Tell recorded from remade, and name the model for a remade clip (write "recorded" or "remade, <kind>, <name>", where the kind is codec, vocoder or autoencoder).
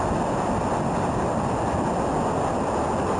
recorded